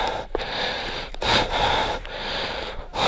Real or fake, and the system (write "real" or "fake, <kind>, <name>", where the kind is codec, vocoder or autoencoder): fake, vocoder, BigVGAN v2